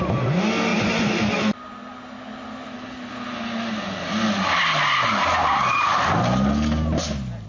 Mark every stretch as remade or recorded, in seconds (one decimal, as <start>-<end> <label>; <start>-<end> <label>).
0.0-7.5 recorded